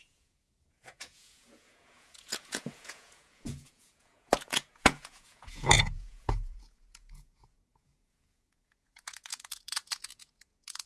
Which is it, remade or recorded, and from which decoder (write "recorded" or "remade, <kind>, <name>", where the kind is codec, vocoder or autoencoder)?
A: remade, vocoder, Vocos